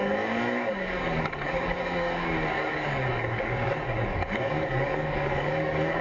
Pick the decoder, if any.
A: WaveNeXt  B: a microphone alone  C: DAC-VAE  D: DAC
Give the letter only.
D